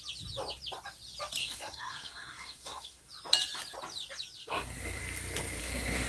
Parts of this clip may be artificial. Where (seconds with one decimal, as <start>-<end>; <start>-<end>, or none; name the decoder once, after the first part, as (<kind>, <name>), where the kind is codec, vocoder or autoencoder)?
1.4-3.1 (codec, SNAC); 4.4-5.0; 5.6-6.1